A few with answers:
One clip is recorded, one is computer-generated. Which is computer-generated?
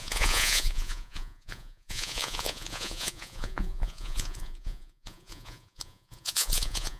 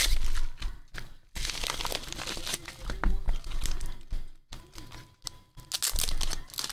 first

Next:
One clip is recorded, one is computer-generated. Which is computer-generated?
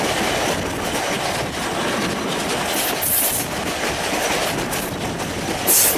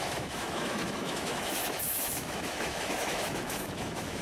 second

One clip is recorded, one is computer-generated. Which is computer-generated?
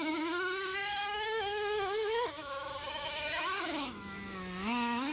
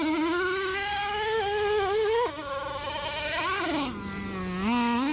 first